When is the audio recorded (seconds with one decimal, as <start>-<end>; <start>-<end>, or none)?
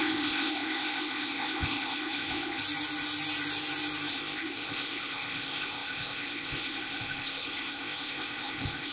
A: 2.6-4.1